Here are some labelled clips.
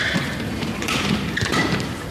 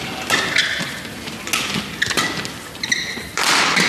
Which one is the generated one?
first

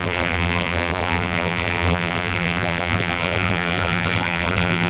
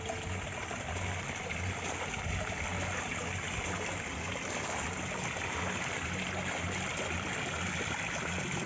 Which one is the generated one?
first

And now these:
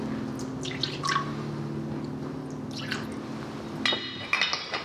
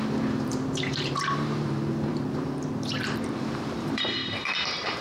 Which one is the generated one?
second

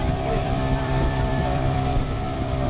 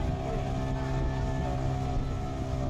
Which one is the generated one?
first